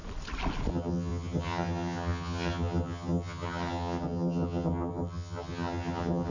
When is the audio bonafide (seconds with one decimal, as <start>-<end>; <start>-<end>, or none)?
0.0-0.7